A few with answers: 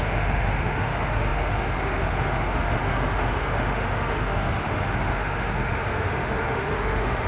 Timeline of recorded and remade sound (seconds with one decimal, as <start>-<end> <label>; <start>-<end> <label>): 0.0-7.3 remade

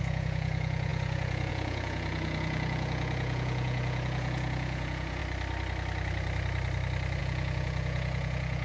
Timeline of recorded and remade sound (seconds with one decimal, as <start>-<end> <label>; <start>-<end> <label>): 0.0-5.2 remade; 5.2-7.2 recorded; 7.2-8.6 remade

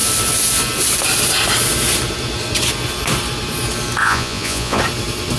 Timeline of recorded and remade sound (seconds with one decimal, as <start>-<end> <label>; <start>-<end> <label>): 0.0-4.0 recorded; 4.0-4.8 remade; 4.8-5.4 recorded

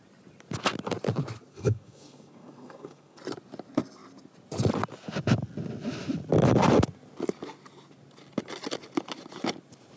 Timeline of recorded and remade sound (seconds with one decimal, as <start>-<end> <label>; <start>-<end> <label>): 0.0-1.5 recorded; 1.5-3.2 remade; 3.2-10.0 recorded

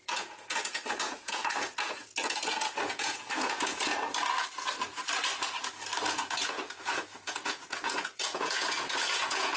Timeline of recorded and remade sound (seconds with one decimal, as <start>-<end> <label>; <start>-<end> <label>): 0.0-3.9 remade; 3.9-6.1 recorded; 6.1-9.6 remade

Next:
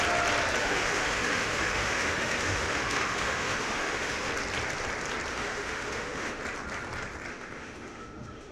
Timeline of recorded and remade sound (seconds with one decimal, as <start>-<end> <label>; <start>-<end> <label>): 0.0-0.6 recorded; 0.6-4.3 remade; 4.3-5.3 recorded; 5.3-6.4 remade; 6.4-7.3 recorded; 7.3-8.5 remade